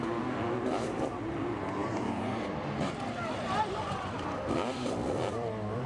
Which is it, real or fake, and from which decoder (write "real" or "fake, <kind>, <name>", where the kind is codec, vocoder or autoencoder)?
fake, vocoder, BigVGAN v2